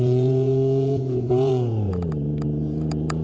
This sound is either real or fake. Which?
fake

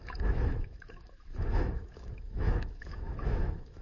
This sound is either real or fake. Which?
fake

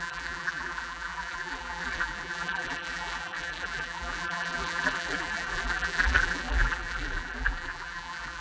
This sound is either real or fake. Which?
fake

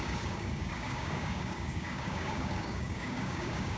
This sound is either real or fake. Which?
fake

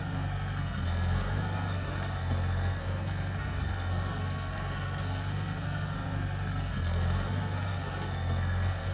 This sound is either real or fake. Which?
fake